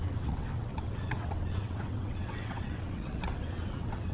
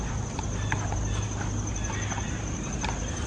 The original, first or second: second